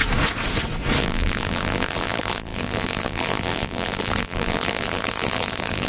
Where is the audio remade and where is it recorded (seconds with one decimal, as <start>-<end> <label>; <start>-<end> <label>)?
0.0-1.0 recorded; 1.0-5.9 remade